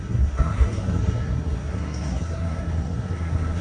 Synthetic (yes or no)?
yes